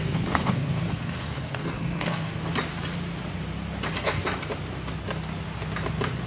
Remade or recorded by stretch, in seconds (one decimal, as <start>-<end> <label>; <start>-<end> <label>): 0.0-2.4 remade; 2.4-6.3 recorded